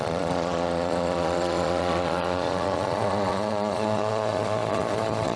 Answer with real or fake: fake